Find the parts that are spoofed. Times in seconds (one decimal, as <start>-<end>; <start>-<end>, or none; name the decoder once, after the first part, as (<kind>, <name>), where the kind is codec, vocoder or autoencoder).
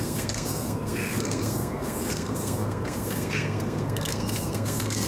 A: 0.0-5.1 (codec, SNAC)